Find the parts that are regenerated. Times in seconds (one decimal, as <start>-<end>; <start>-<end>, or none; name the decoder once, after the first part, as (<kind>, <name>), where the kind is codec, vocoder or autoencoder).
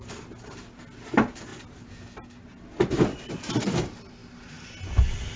none